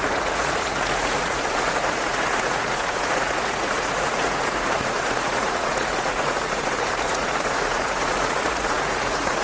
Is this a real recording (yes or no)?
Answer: no